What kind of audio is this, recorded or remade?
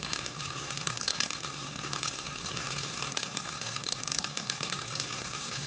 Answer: remade